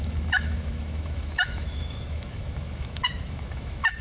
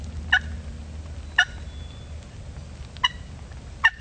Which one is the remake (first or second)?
first